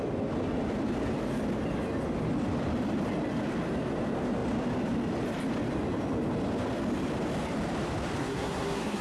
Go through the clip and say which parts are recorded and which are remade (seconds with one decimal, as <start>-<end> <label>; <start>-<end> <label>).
0.0-8.2 recorded; 8.2-9.0 remade